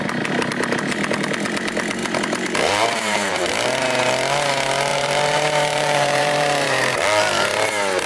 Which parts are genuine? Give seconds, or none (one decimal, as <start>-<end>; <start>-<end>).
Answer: 0.0-2.0; 3.5-4.9; 6.9-8.1